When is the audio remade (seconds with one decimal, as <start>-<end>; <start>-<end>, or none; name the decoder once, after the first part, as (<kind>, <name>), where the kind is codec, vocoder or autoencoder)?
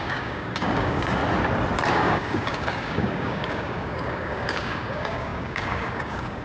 0.0-1.2 (codec, DAC); 1.9-6.4